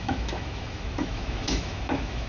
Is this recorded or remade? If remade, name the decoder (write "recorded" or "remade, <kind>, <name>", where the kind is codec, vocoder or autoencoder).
remade, autoencoder, DAC-VAE